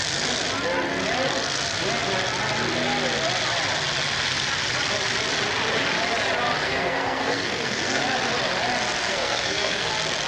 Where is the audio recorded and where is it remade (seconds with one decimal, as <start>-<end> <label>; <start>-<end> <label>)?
0.0-6.6 recorded; 6.6-8.0 remade; 8.0-9.0 recorded; 9.0-9.9 remade; 9.9-10.3 recorded